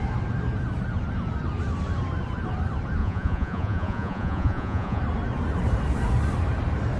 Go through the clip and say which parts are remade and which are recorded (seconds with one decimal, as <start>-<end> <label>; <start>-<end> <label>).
0.0-3.0 recorded; 3.0-5.0 remade; 5.0-7.0 recorded